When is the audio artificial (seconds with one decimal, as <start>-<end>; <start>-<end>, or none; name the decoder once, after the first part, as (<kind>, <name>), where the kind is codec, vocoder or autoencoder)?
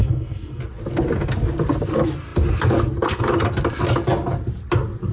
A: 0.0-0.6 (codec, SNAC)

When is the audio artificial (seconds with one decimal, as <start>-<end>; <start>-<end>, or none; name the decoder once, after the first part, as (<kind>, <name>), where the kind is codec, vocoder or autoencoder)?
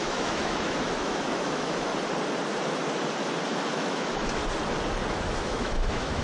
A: 0.0-1.9 (autoencoder, DAC-VAE); 3.7-4.4; 5.1-6.2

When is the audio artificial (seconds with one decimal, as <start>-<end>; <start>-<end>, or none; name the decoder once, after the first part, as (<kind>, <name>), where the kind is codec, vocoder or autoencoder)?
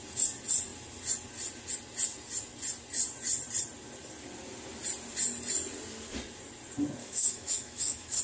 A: 7.0-8.2 (autoencoder, DAC-VAE)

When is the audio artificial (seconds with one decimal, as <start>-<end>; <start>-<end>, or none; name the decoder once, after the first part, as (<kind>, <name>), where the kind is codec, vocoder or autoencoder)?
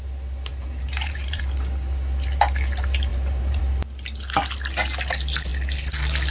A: 0.5-1.4 (vocoder, BigVGAN v2); 3.1-3.6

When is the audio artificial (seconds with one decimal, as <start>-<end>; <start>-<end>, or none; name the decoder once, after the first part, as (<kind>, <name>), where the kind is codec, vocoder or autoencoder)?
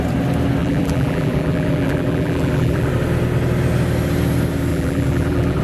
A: 0.6-2.9 (vocoder, BigVGAN v2); 4.7-5.6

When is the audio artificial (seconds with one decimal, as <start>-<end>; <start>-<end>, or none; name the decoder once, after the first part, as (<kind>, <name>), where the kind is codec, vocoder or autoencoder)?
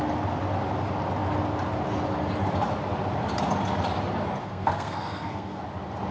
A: 4.4-5.6 (codec, SNAC)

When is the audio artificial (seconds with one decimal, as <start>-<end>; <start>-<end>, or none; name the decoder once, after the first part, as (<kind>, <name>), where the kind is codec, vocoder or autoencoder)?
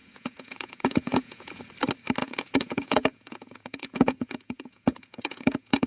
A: 0.0-1.6 (vocoder, Vocos); 2.2-5.9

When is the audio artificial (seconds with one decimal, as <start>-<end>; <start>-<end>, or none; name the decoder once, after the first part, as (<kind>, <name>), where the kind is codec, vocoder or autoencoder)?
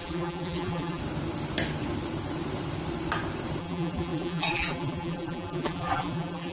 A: 0.0-1.0 (vocoder, BigVGAN v2); 3.6-6.5